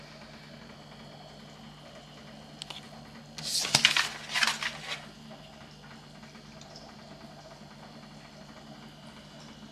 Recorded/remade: recorded